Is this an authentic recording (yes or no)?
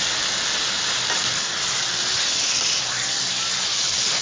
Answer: yes